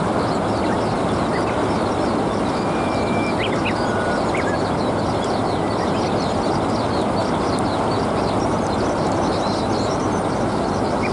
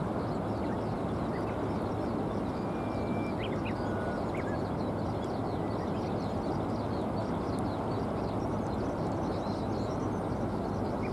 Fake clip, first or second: first